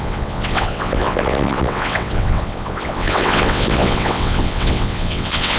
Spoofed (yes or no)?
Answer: yes